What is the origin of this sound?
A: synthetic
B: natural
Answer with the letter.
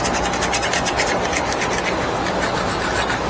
B